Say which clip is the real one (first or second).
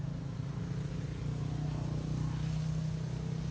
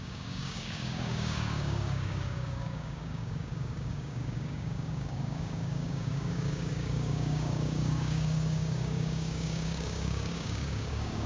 first